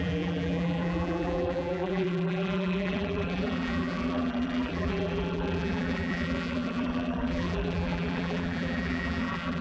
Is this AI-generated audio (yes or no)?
yes